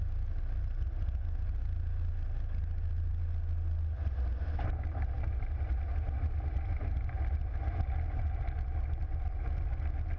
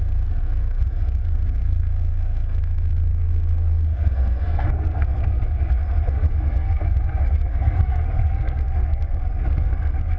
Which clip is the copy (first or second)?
second